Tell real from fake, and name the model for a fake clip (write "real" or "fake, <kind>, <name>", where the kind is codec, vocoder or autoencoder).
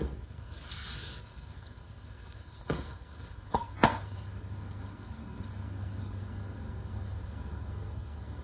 fake, codec, SNAC